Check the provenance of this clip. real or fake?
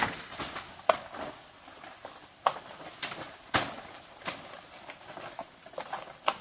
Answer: real